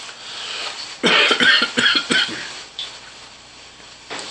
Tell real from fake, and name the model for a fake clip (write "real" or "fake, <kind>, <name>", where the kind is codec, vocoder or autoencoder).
real